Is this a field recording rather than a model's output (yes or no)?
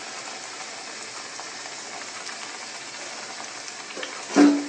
yes